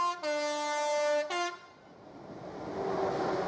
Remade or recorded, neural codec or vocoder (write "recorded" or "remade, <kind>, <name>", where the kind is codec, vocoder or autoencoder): recorded